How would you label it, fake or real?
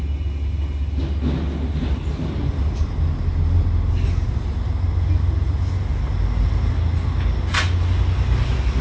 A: real